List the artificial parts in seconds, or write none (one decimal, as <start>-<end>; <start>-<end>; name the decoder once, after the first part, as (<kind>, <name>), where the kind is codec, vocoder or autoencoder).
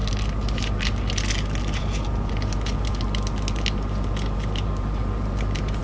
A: none